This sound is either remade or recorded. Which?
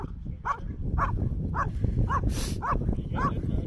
remade